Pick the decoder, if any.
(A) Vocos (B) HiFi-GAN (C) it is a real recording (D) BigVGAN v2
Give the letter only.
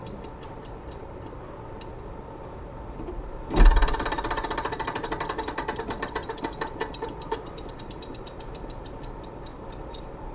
D